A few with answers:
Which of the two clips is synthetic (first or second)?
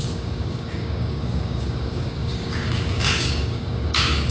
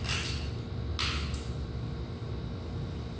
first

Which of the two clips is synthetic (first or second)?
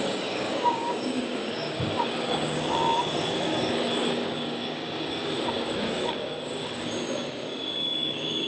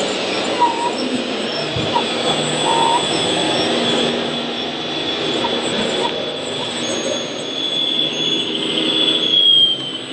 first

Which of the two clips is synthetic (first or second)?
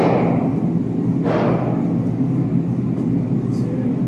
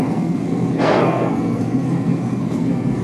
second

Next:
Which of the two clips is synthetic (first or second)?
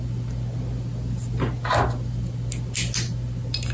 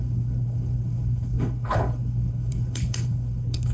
second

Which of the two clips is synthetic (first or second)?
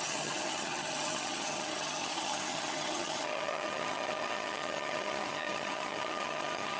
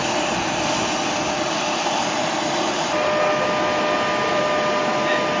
first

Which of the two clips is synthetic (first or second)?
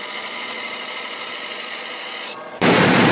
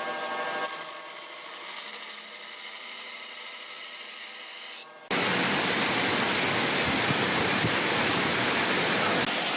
first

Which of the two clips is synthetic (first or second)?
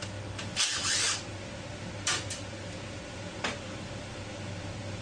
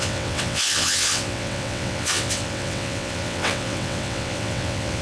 second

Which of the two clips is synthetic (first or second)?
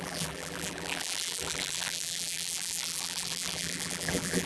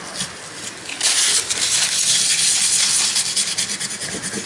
first